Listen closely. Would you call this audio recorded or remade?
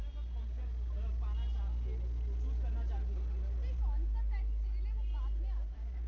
recorded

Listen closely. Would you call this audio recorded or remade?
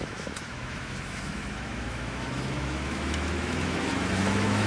remade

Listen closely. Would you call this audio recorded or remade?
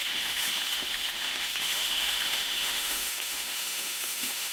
remade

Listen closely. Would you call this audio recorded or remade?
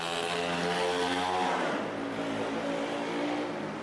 recorded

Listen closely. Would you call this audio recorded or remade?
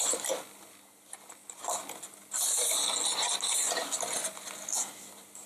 recorded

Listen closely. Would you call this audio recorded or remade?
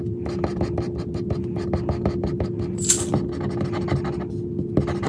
recorded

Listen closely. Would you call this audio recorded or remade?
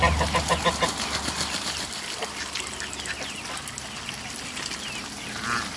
recorded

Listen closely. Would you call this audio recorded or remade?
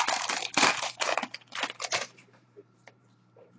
remade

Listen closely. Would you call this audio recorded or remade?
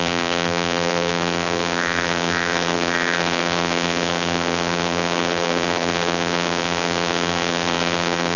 remade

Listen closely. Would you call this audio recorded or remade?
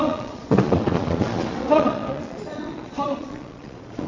remade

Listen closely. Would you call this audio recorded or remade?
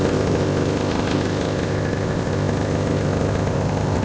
remade